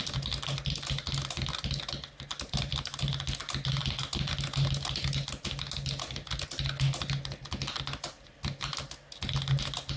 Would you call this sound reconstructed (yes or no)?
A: no